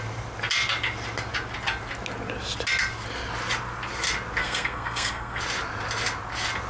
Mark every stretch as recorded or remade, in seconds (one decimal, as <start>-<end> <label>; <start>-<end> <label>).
0.0-4.4 recorded; 4.4-5.4 remade; 5.4-6.7 recorded